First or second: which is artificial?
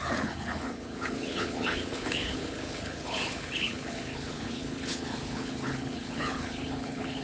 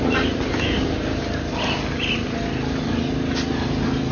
first